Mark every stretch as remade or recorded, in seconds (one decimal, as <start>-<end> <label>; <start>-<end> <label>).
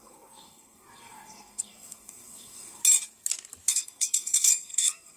0.0-2.8 remade; 2.8-3.7 recorded; 3.7-5.2 remade